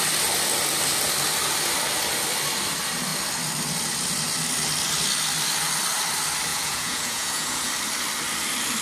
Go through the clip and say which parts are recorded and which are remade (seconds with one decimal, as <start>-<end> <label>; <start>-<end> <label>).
0.0-6.5 recorded; 6.5-7.7 remade; 7.7-8.8 recorded

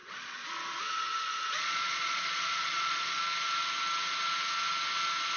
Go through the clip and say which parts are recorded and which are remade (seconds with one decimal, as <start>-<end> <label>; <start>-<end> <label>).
0.0-3.2 remade; 3.2-5.4 recorded

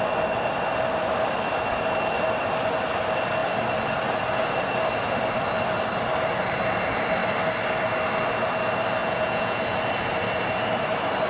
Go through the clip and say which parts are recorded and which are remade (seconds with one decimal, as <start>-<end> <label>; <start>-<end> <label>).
0.0-9.0 recorded; 9.0-9.6 remade; 9.6-11.3 recorded

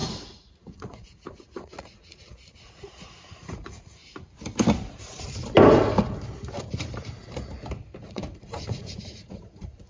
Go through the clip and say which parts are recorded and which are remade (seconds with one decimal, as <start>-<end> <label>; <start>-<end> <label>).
0.0-4.0 remade; 4.0-8.0 recorded; 8.0-9.9 remade

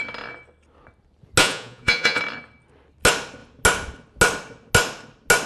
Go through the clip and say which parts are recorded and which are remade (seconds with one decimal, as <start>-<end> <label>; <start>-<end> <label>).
0.0-1.4 recorded; 1.4-2.2 remade; 2.2-5.5 recorded

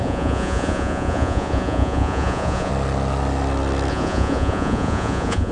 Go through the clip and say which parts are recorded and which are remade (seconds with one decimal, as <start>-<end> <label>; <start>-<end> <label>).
0.0-2.7 remade; 2.7-3.9 recorded; 3.9-5.5 remade

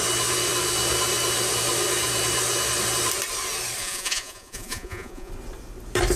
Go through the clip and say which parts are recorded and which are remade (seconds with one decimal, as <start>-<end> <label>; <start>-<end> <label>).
0.0-3.8 recorded; 3.8-5.3 remade; 5.3-6.2 recorded